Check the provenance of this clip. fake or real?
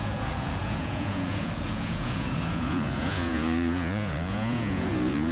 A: fake